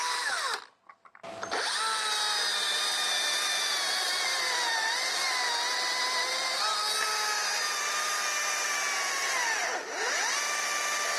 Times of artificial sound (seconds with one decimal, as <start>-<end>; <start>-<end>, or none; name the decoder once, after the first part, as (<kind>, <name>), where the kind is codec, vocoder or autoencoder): none

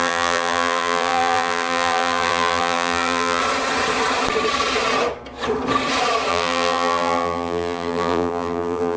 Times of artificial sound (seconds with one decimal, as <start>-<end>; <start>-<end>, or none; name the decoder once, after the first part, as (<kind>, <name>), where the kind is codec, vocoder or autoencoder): 0.0-3.4 (vocoder, BigVGAN v2); 6.3-9.0

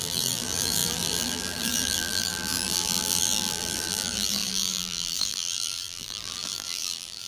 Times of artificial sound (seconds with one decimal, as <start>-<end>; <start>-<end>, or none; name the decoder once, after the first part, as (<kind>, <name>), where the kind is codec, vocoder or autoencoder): 0.0-7.3 (vocoder, BigVGAN v2)

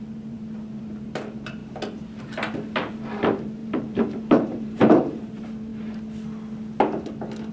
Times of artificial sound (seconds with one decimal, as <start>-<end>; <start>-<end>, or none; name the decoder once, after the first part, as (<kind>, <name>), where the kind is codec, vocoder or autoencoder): 0.0-1.6 (vocoder, BigVGAN v2); 2.9-5.7

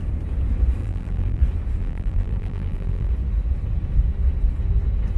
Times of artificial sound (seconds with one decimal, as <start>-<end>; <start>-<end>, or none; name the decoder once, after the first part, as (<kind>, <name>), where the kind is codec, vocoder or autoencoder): 0.8-1.4 (vocoder, BigVGAN v2); 1.8-3.1

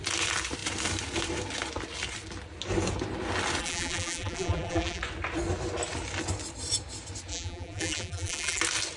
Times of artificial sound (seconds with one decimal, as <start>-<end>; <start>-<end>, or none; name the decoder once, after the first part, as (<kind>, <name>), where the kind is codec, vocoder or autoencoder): 3.6-5.0 (vocoder, BigVGAN v2); 7.3-8.6

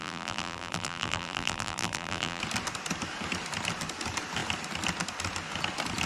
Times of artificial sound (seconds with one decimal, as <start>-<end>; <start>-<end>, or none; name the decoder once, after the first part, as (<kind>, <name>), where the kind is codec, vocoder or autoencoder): 0.0-2.4 (vocoder, BigVGAN v2)

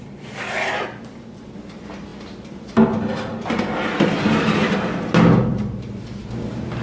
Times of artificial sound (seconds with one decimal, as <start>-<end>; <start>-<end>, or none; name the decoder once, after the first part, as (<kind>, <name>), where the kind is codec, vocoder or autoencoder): 5.5-6.8 (vocoder, BigVGAN v2)